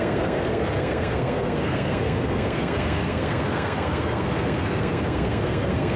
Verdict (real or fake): fake